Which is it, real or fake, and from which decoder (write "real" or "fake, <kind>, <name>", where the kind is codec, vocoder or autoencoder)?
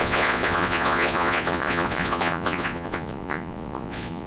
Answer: fake, vocoder, Vocos